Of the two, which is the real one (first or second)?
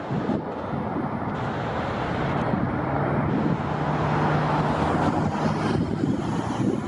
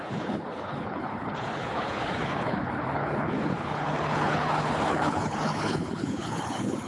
first